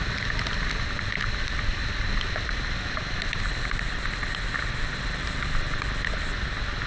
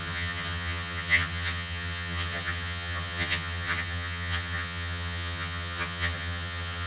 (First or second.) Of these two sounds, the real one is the first